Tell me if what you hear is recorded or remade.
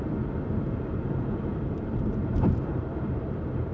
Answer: remade